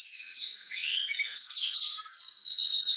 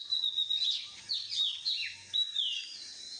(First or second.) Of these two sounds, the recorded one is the second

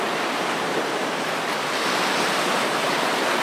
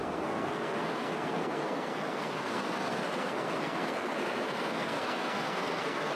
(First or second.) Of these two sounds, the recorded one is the first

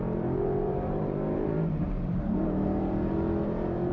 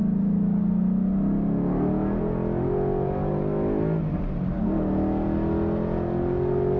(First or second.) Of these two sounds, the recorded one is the second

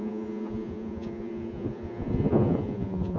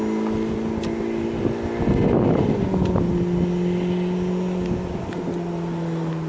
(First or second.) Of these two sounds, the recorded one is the second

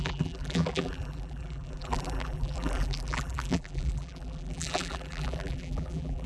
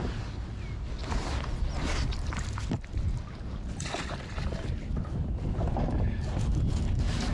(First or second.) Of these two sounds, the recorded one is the second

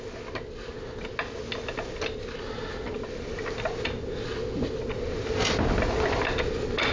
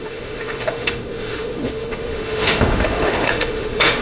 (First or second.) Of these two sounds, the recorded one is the first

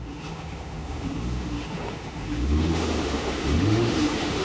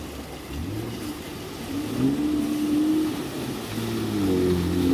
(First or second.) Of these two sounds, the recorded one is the second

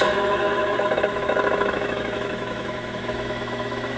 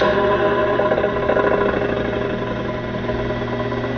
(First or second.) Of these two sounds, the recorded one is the second